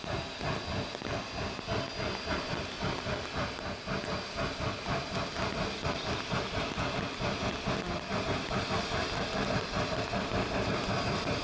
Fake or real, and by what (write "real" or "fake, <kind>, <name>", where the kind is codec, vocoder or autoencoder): real